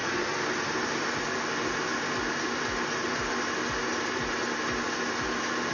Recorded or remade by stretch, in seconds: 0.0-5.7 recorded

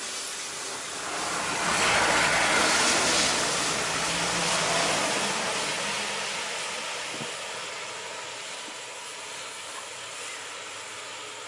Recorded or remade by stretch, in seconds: 0.0-11.5 recorded

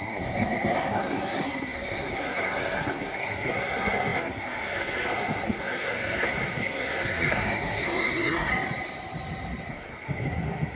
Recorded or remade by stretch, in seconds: 0.0-8.5 remade; 8.5-9.7 recorded; 9.7-10.8 remade

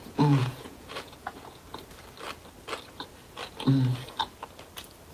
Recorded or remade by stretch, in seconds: 0.0-1.6 remade; 1.6-5.1 recorded